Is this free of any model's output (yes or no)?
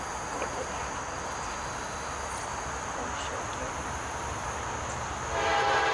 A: yes